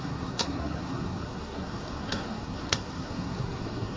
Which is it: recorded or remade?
remade